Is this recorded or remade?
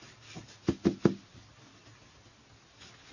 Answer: recorded